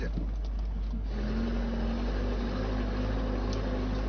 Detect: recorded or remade recorded